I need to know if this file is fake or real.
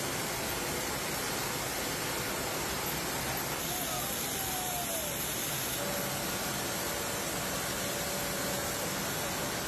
real